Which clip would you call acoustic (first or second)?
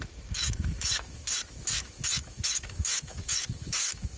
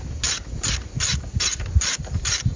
second